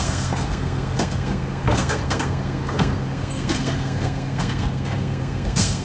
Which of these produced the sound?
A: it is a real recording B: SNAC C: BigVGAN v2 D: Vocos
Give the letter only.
B